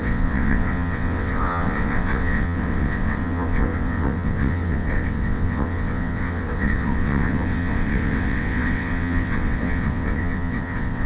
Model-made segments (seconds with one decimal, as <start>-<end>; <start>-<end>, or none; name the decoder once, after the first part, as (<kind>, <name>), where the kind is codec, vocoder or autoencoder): 0.0-11.1 (vocoder, WaveNeXt)